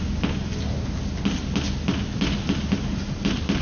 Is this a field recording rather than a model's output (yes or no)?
yes